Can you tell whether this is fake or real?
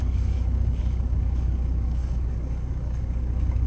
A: fake